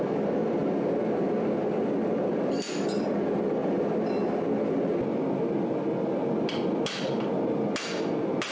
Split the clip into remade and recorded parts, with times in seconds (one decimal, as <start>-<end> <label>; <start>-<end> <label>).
0.0-0.6 remade; 0.6-2.3 recorded; 2.3-3.6 remade; 3.6-7.0 recorded; 7.0-8.5 remade